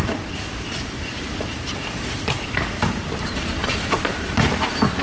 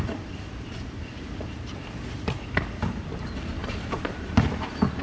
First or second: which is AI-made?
first